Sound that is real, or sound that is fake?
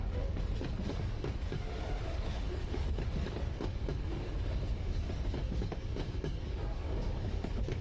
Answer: fake